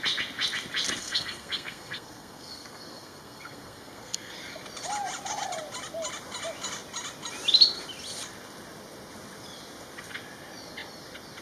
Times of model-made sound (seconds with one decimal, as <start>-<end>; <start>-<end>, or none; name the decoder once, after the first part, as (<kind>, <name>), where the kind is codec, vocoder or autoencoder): 1.0-4.3 (codec, SNAC)